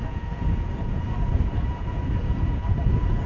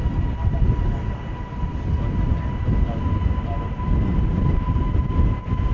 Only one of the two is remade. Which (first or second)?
first